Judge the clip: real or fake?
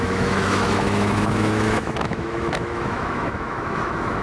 fake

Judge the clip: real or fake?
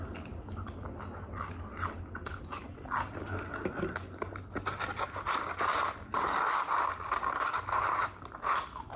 real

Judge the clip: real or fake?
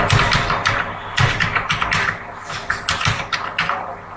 real